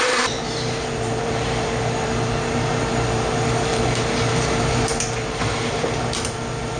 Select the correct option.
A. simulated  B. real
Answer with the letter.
A